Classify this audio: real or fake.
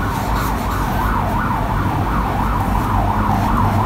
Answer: real